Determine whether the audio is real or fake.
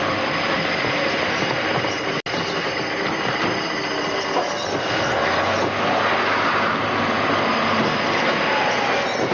real